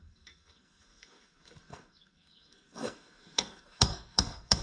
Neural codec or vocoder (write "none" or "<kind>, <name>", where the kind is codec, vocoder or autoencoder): codec, SNAC